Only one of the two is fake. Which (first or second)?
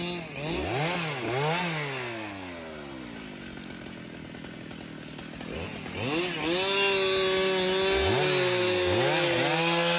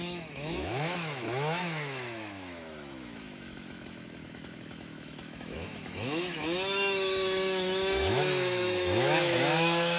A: second